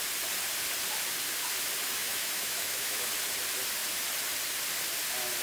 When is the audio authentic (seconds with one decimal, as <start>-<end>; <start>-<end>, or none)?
0.0-1.8; 3.1-5.4